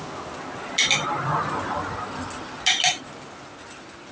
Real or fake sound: real